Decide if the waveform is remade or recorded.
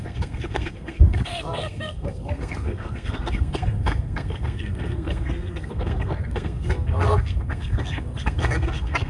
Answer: remade